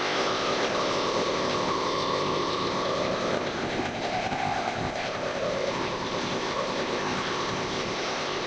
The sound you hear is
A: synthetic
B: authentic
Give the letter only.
A